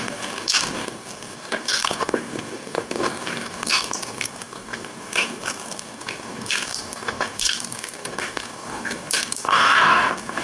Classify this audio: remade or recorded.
remade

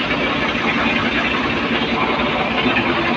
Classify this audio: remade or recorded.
recorded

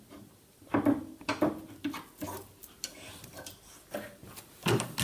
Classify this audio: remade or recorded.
recorded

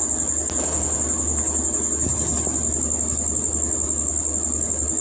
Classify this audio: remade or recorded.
recorded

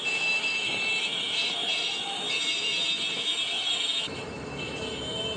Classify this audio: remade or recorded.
remade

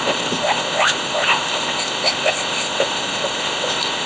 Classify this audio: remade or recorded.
remade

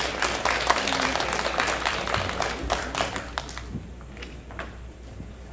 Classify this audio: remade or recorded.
recorded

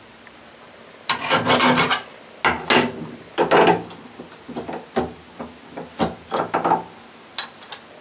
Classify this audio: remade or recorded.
recorded